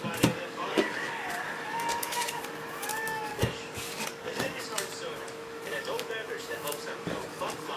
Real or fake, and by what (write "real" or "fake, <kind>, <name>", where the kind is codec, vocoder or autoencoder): fake, codec, DAC